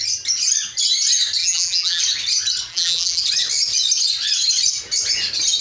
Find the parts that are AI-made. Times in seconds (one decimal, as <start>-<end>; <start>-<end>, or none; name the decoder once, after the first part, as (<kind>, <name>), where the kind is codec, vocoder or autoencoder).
1.4-2.0 (vocoder, BigVGAN v2); 2.7-3.2